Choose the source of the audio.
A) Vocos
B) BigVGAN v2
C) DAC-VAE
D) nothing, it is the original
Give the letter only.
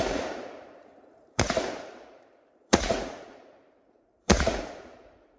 A